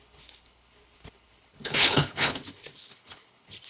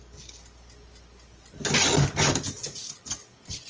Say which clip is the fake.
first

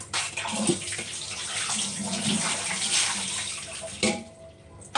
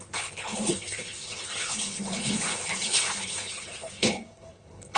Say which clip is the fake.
second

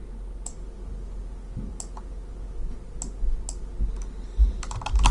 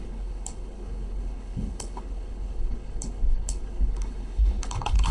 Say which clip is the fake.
second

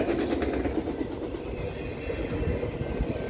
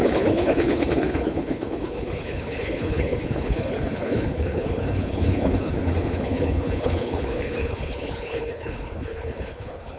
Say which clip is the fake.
second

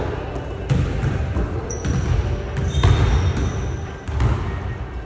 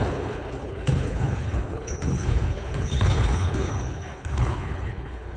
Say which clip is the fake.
second